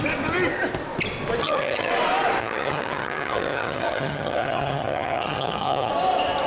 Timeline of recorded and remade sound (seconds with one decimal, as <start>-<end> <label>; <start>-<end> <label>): 0.0-1.4 recorded; 1.4-1.9 remade; 1.9-2.4 recorded; 2.4-5.9 remade; 5.9-6.5 recorded

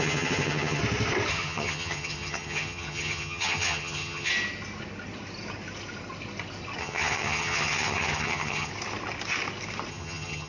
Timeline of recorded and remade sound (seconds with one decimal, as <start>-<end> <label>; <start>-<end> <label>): 0.0-0.8 remade; 0.8-1.3 recorded; 1.3-4.3 remade; 4.3-6.8 recorded; 6.8-8.7 remade; 8.7-9.9 recorded; 9.9-10.5 remade

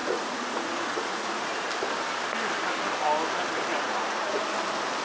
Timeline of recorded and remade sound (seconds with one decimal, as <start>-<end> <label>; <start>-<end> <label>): 0.0-1.5 remade; 1.5-3.7 recorded; 3.7-4.4 remade; 4.4-5.0 recorded

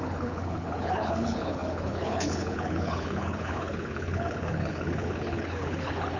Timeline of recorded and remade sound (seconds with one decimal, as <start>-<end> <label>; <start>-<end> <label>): 0.0-6.2 remade

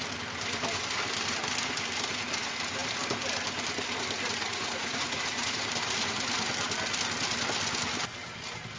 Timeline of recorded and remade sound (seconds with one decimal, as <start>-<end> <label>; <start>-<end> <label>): 0.0-4.4 recorded; 4.4-5.6 remade; 5.6-8.8 recorded